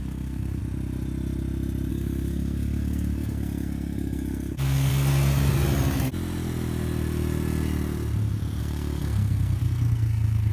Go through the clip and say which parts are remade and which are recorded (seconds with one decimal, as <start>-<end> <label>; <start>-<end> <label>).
0.0-0.6 remade; 0.6-1.9 recorded; 1.9-4.9 remade; 4.9-8.6 recorded; 8.6-10.5 remade